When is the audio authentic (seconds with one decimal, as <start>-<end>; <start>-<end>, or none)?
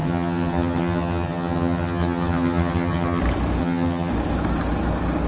3.2-3.6; 4.1-5.3